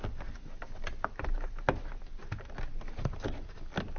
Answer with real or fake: real